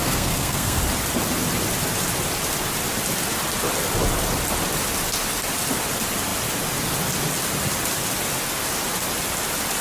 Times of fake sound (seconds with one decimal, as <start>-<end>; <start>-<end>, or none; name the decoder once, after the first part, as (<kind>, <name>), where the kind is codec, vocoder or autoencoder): 0.0-0.8 (codec, SNAC)